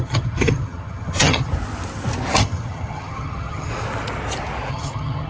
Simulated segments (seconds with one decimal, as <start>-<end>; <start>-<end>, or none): 0.0-1.5; 2.4-3.7; 4.7-5.3